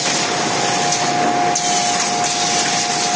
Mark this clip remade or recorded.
recorded